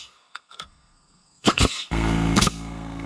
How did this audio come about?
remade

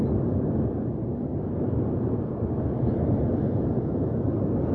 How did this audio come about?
recorded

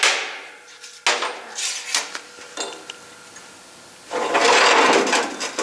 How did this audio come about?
recorded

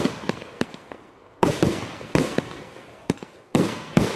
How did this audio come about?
remade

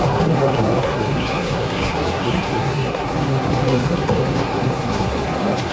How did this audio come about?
remade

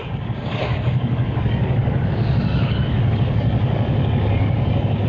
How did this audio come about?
remade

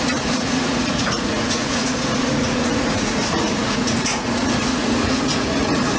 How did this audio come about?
remade